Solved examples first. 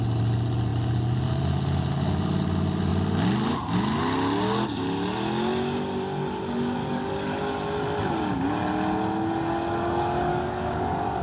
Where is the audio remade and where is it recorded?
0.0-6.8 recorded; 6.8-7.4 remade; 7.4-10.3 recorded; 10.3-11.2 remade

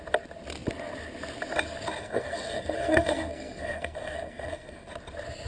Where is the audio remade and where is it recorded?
0.0-2.0 recorded; 2.0-4.9 remade; 4.9-5.5 recorded

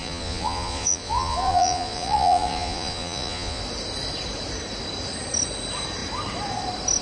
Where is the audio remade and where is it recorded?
0.0-3.6 remade; 3.6-7.0 recorded

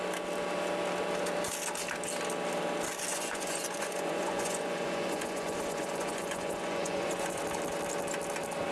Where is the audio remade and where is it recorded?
0.0-3.1 recorded; 3.1-7.4 remade; 7.4-8.7 recorded

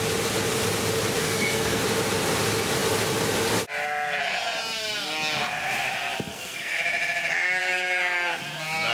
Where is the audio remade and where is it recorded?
0.0-1.2 recorded; 1.2-1.8 remade; 1.8-6.3 recorded; 6.3-6.8 remade; 6.8-7.6 recorded; 7.6-8.4 remade; 8.4-8.9 recorded

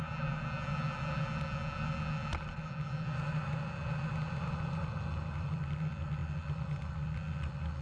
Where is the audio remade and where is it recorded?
0.0-7.8 recorded

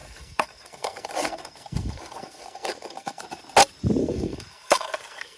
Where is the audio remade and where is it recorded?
0.0-3.2 remade; 3.2-4.0 recorded; 4.0-5.4 remade

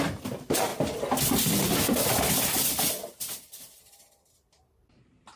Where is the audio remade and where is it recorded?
0.0-0.7 remade; 0.7-3.8 recorded; 3.8-5.4 remade